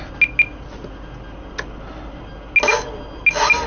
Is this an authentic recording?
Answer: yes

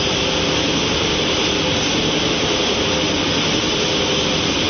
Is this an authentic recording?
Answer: yes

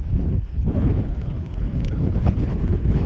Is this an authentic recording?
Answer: no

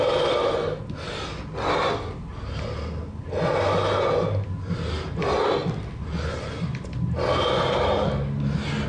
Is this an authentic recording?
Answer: yes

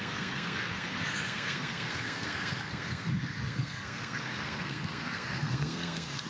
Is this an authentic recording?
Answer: no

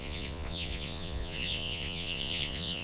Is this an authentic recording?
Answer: no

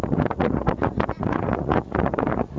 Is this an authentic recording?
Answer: no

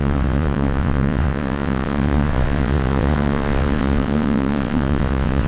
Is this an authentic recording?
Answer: no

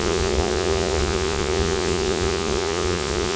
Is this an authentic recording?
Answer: no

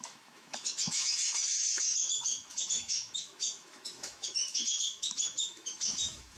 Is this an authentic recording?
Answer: no